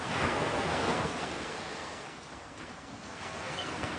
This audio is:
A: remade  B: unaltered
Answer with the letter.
A